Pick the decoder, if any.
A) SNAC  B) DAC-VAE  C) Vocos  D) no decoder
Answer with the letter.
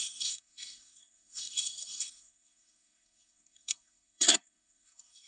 A